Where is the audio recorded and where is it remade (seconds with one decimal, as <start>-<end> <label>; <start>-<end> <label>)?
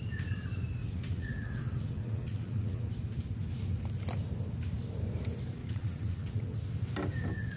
0.0-0.8 recorded; 0.8-2.9 remade; 2.9-5.6 recorded; 5.6-6.6 remade; 6.6-7.6 recorded